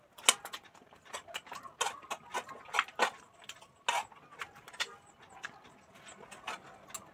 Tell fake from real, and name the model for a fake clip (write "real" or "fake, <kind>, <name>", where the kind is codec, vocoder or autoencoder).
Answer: real